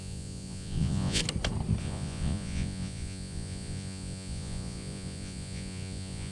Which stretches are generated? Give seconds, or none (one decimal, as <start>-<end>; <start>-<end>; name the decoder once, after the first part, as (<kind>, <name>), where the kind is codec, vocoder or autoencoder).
0.0-1.2 (vocoder, Vocos); 1.8-6.3